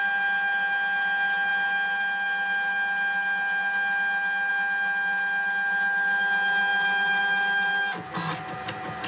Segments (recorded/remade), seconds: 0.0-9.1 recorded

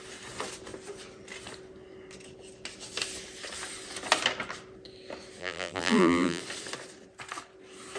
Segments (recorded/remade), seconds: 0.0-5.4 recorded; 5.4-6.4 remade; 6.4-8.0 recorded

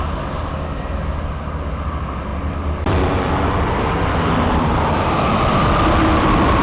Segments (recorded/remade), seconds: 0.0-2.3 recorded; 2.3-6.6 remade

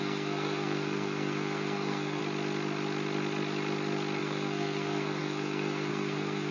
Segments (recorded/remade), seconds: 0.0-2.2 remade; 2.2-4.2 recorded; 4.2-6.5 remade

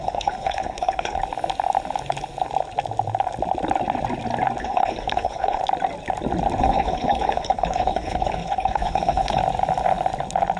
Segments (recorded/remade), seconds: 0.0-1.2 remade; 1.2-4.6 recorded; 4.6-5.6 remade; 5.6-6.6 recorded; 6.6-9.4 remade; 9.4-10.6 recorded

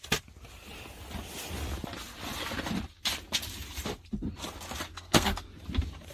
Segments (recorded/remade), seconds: 0.0-4.9 recorded; 4.9-5.5 remade; 5.5-6.1 recorded

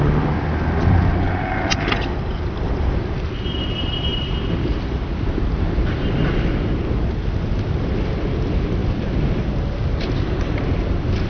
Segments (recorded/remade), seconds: 0.0-11.3 recorded